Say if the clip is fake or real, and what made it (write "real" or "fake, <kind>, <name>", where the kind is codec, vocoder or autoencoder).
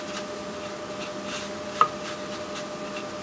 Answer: real